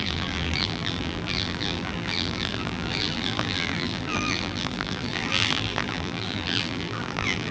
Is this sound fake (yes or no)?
yes